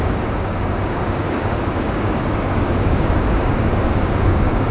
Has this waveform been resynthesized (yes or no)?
yes